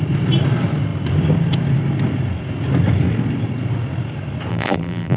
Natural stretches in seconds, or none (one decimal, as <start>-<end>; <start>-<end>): 0.0-4.5